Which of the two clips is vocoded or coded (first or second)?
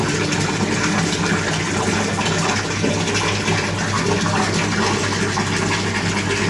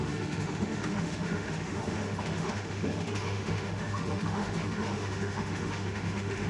second